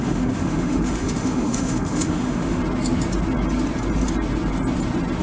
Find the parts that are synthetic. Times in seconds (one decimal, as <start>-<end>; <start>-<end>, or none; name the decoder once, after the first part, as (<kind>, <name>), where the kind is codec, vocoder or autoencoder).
0.0-2.6 (autoencoder, DAC-VAE)